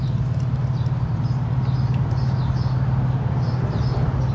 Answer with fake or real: real